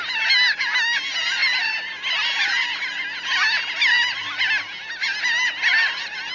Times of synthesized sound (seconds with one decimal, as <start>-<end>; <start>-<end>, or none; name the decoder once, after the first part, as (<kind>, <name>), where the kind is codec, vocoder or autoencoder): none